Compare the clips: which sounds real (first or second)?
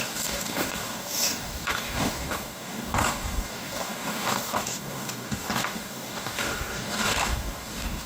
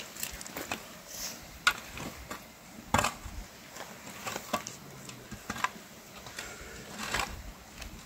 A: second